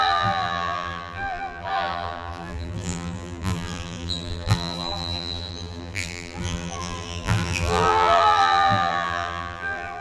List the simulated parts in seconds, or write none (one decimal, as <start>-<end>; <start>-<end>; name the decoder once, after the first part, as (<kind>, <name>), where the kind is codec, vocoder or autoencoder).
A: 0.0-10.0 (vocoder, BigVGAN v2)